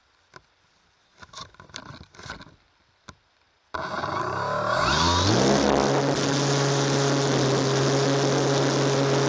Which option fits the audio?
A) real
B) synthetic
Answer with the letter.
A